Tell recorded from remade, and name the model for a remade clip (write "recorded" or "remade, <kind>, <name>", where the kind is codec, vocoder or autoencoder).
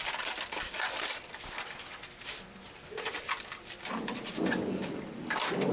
recorded